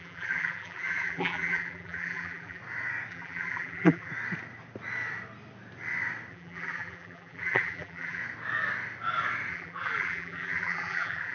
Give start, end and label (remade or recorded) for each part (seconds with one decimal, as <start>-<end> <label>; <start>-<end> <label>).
0.0-2.6 remade; 2.6-3.1 recorded; 3.1-4.1 remade; 4.1-6.3 recorded; 6.3-8.2 remade; 8.2-9.5 recorded; 9.5-11.3 remade